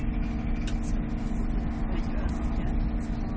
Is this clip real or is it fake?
real